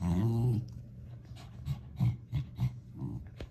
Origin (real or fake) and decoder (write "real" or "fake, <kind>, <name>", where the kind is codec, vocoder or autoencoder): fake, codec, DAC